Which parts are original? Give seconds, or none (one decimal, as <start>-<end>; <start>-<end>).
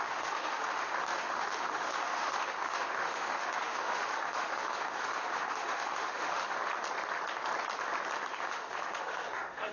6.6-8.3